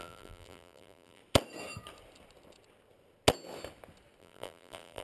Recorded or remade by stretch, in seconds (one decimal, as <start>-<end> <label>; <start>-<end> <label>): 0.0-1.2 remade; 1.2-4.2 recorded; 4.2-5.0 remade